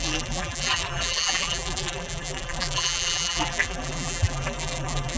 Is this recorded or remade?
remade